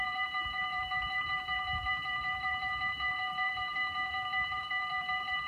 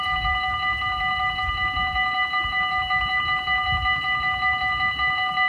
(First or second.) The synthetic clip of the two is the first